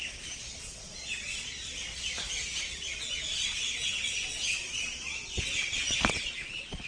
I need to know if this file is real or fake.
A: fake